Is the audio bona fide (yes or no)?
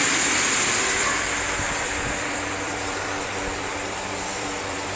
no